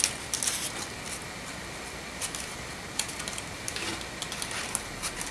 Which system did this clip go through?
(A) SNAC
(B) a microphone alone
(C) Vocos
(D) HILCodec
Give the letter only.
B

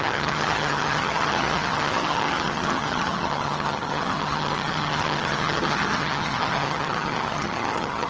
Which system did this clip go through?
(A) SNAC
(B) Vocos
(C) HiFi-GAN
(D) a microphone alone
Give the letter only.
C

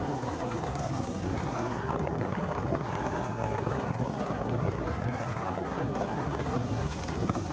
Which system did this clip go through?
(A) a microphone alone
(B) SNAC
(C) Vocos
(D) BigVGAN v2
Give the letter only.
B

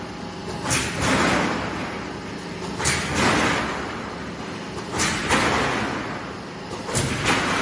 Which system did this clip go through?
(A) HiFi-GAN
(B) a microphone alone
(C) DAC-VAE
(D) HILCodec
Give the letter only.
B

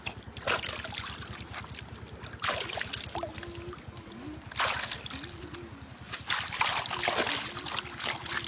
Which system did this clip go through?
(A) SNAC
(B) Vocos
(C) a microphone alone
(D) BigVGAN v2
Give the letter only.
C